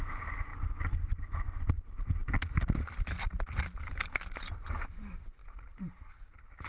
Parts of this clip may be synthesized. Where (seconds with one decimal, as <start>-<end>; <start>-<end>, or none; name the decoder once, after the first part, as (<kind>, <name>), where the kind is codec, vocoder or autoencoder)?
none